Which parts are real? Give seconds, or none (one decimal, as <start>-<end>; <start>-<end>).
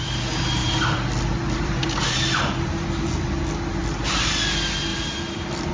0.0-0.6; 3.4-3.8; 4.3-4.9